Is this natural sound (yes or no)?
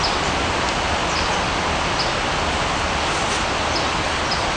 yes